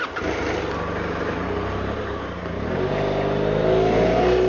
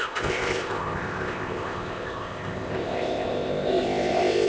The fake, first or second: second